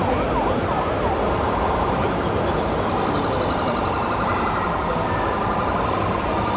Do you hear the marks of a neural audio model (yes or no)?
no